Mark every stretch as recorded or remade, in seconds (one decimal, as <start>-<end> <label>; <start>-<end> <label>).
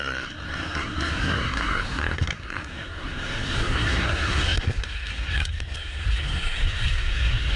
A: 0.0-7.6 remade